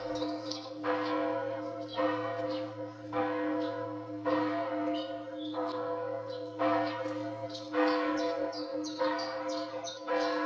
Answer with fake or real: fake